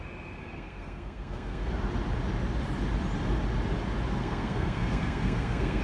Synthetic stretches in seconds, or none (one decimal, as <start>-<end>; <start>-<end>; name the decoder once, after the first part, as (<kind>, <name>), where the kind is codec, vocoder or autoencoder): 0.4-1.7 (codec, SNAC); 4.2-5.8